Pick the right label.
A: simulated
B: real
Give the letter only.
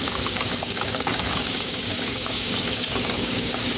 A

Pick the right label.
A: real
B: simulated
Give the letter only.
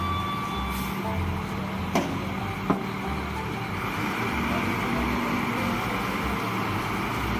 A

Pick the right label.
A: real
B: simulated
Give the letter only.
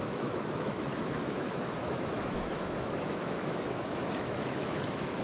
B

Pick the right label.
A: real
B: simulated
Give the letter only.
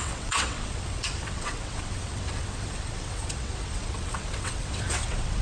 B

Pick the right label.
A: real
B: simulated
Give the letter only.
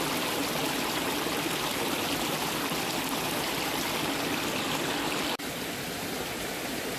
A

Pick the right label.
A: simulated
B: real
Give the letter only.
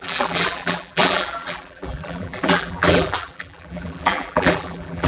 A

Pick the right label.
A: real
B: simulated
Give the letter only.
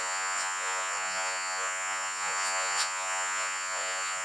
B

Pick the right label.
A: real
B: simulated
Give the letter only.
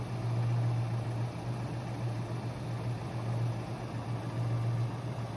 A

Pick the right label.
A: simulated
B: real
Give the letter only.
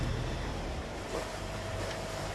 A